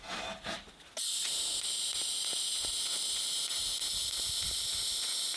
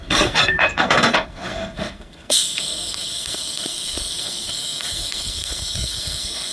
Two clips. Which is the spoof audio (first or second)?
second